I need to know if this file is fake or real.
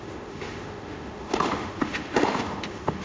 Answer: fake